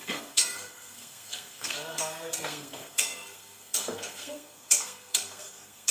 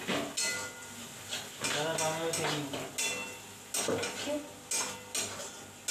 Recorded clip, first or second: second